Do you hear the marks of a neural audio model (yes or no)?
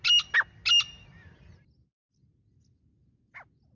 no